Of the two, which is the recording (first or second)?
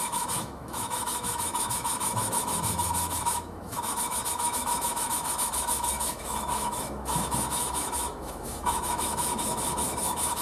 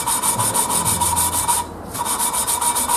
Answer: second